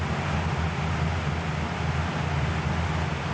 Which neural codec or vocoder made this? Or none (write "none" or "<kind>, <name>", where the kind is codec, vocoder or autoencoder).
none